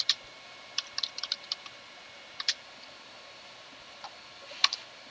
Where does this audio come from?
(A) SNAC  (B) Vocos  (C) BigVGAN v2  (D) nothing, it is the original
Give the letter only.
C